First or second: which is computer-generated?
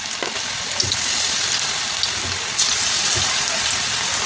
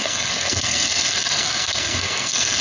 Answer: second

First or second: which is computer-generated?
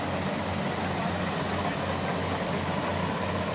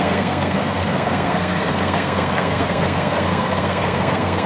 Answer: second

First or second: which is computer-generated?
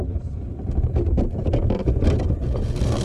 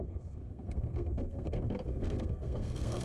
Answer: second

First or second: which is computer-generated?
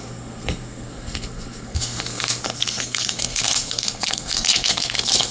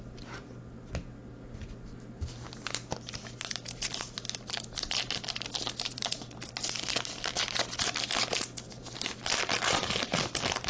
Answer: first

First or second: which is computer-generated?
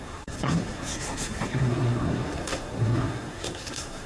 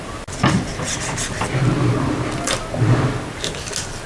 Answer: first